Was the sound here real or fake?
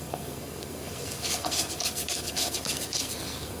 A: fake